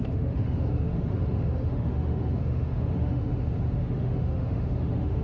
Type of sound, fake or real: fake